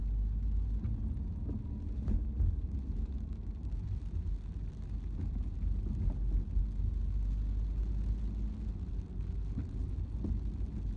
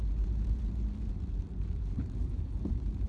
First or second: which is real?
first